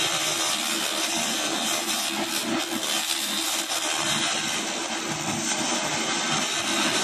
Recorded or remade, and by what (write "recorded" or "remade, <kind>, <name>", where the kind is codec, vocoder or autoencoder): remade, vocoder, BigVGAN v2